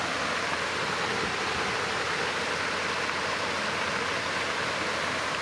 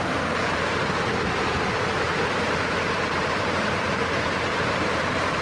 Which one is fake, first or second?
second